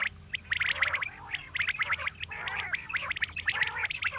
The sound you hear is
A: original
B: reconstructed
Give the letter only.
A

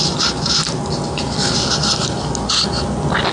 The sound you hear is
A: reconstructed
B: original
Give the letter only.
B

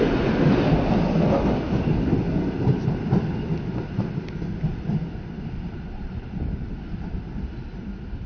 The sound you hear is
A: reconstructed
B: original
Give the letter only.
B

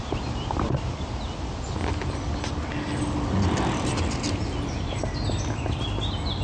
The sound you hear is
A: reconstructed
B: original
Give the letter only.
B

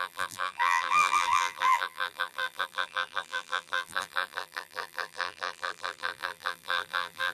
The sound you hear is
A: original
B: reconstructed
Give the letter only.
B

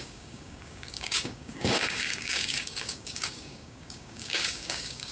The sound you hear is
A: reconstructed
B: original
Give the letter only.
A